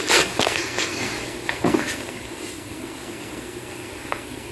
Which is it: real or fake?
fake